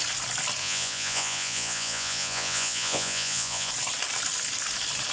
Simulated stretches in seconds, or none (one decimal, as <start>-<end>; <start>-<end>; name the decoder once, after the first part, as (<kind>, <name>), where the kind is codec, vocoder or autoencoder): 0.6-3.7 (vocoder, Vocos)